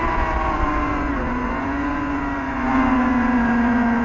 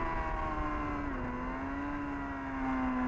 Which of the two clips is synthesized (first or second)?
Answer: first